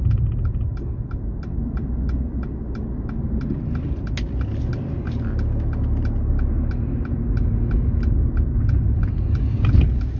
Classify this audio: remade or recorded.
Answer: recorded